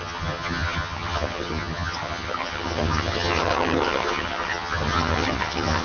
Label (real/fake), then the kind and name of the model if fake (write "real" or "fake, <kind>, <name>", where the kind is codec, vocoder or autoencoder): fake, vocoder, HiFi-GAN